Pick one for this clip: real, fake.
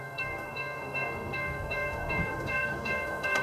fake